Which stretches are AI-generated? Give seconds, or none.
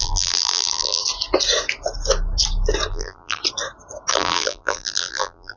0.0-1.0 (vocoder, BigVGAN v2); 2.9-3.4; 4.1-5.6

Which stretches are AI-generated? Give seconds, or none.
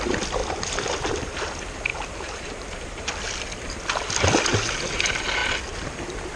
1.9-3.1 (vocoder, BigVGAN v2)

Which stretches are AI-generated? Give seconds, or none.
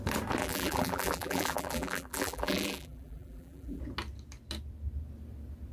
0.4-3.8 (vocoder, BigVGAN v2)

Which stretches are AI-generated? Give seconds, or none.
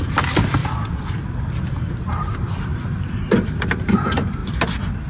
0.0-0.6 (vocoder, BigVGAN v2); 2.1-4.4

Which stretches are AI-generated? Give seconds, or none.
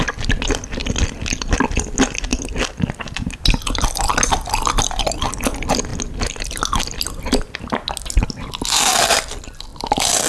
none